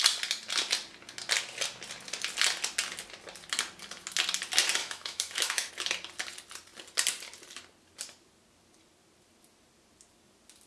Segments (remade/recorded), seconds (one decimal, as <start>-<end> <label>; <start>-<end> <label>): 0.0-4.8 recorded; 4.8-5.7 remade; 5.7-10.7 recorded